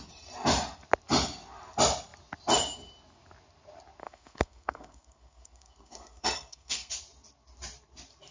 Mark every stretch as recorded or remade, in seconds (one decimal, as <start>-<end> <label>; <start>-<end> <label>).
0.0-4.0 recorded; 4.0-6.9 remade; 6.9-8.3 recorded